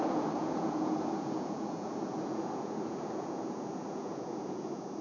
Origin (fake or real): fake